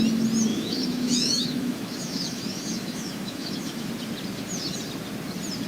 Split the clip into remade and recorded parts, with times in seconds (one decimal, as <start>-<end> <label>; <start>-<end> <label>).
0.0-0.5 recorded; 0.5-3.9 remade; 3.9-5.7 recorded